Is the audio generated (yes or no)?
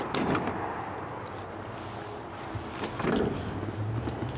no